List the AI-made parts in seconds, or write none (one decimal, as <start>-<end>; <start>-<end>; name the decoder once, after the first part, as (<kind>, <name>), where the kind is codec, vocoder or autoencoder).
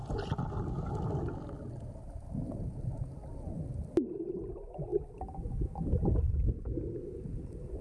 none